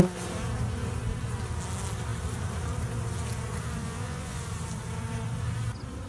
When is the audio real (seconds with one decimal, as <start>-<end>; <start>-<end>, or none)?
0.0-3.8; 4.4-6.1